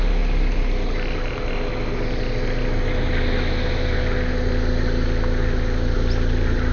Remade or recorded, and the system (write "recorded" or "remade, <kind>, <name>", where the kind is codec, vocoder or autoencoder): recorded